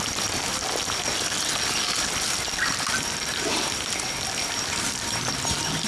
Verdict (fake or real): real